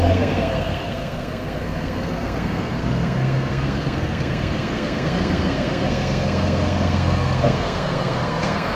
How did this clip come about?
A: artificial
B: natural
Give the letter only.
A